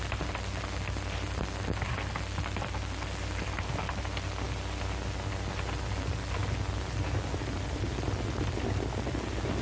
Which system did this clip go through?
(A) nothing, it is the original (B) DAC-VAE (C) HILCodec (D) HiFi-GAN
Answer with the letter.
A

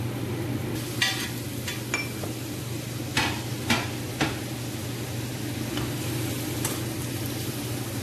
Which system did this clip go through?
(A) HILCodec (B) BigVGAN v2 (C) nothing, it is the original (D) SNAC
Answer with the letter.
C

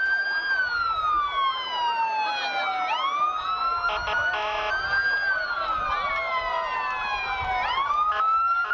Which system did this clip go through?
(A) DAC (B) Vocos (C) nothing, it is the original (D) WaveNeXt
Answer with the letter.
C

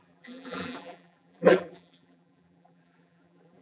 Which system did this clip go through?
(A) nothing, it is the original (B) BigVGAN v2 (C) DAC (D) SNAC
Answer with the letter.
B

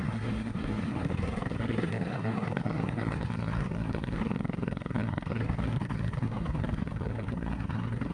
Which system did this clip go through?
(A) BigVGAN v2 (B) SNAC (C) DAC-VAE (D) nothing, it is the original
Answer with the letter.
B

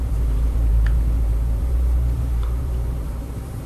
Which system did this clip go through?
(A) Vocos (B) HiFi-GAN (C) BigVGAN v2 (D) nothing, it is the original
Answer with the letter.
C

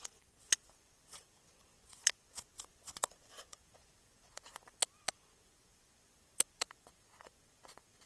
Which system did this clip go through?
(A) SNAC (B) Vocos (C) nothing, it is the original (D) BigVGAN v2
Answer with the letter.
B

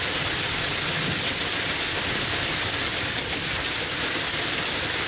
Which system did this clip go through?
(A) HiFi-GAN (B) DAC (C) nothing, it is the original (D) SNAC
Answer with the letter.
C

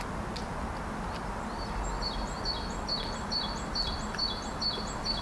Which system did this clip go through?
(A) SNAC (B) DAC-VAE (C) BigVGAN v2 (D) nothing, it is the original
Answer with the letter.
D